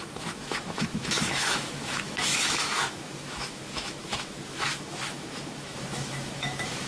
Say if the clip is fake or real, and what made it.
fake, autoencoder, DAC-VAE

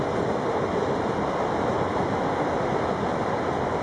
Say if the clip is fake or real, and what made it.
real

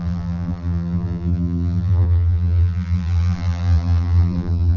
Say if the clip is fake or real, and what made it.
fake, vocoder, BigVGAN v2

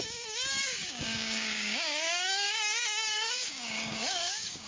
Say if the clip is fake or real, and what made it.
fake, codec, DAC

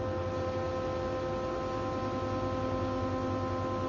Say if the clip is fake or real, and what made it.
real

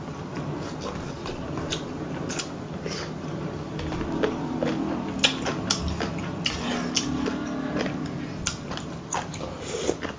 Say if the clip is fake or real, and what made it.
real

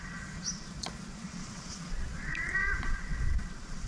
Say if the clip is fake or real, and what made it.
fake, vocoder, Vocos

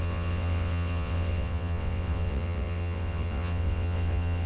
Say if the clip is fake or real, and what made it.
fake, vocoder, WaveNeXt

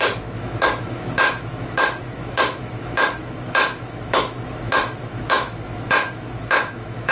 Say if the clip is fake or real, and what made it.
fake, autoencoder, DAC-VAE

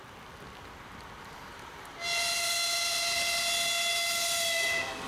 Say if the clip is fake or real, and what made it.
real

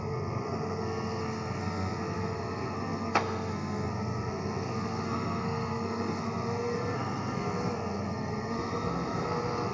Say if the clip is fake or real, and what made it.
fake, codec, SNAC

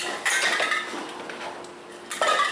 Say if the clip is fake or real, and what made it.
real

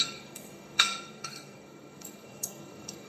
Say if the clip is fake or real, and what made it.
fake, codec, SNAC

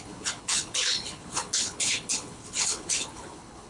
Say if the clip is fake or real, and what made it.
fake, codec, HILCodec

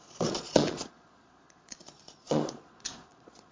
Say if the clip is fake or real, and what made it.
fake, vocoder, Vocos